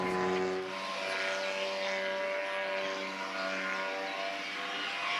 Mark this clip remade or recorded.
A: recorded